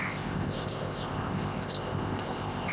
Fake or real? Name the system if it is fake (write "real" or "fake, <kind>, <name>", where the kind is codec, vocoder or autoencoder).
fake, codec, ZipCodec